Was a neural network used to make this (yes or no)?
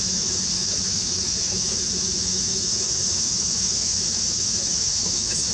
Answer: yes